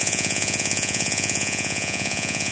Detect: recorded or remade remade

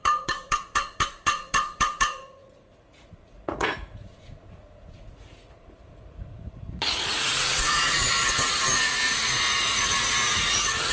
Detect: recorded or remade remade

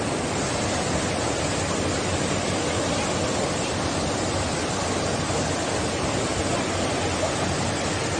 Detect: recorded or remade recorded